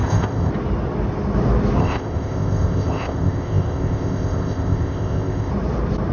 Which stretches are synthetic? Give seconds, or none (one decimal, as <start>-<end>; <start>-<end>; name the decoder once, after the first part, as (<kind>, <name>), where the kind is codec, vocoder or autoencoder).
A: 0.0-0.5 (codec, ZipCodec); 1.8-5.5